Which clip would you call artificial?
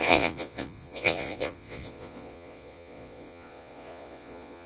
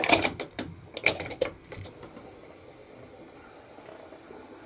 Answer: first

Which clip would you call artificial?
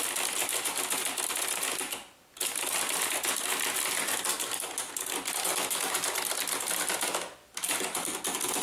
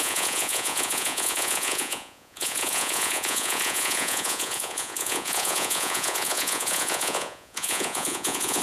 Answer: second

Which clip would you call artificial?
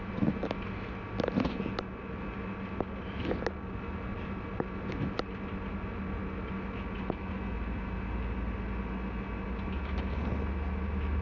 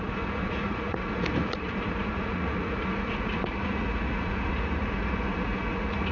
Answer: second